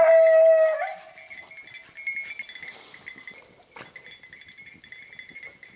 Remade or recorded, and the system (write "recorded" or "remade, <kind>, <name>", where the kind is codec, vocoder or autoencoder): recorded